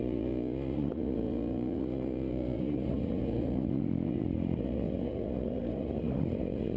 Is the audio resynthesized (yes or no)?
yes